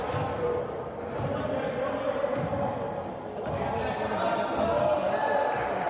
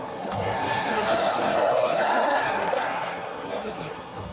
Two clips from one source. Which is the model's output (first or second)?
second